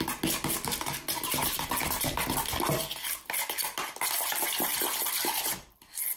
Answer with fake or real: real